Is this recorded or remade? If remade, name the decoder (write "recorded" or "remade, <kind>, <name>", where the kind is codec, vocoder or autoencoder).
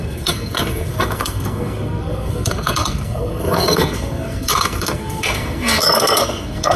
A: remade, codec, SNAC